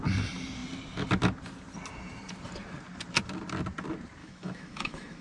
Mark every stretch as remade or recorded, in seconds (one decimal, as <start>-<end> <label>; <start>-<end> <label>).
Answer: 0.0-4.2 recorded; 4.2-5.2 remade